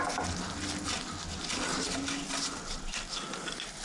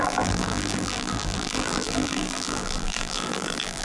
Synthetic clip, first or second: second